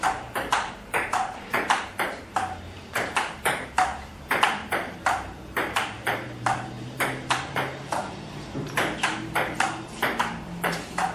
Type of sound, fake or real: fake